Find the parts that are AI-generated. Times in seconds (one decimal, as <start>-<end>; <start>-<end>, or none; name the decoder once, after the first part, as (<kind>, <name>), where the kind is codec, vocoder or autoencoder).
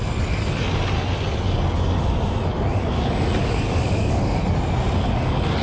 3.4-4.4 (codec, DAC)